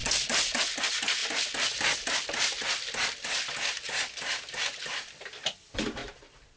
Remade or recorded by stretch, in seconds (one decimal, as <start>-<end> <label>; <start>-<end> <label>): 0.0-6.6 recorded